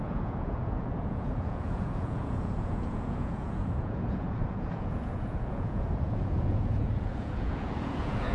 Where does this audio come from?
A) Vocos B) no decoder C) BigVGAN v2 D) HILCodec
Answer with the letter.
A